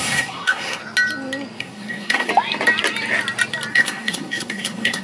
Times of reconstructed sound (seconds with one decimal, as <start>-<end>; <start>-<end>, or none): 0.0-0.8; 1.6-2.3; 3.7-5.0